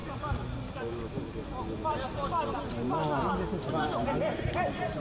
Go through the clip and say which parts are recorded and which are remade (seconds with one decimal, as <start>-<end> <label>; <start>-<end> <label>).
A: 0.0-5.0 recorded